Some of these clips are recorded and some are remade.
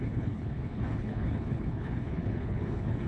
remade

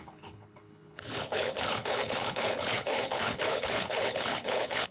remade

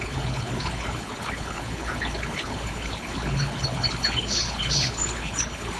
remade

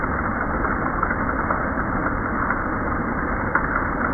recorded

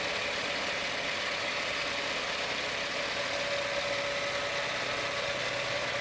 recorded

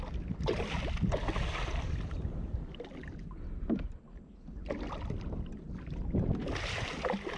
recorded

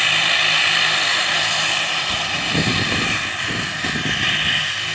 recorded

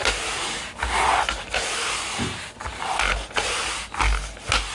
recorded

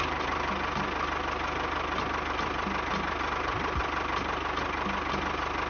recorded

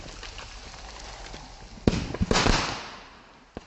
recorded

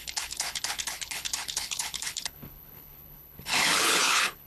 remade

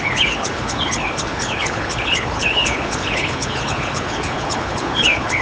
remade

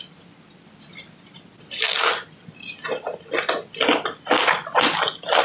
recorded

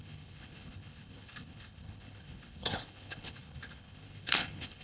remade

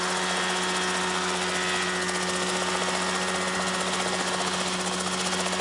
recorded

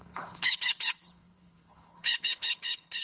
remade